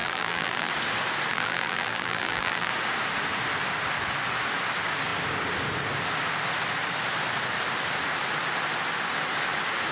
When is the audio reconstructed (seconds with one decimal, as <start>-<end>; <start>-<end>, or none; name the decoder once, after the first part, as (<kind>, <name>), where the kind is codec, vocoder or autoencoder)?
0.0-0.7 (vocoder, BigVGAN v2); 1.3-2.7